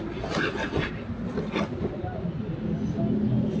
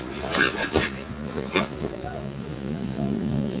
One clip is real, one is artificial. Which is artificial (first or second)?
second